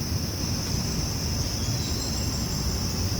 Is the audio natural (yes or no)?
yes